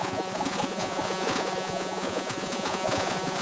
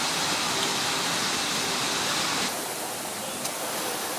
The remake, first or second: first